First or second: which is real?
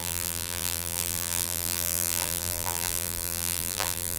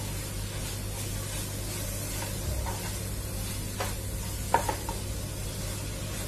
second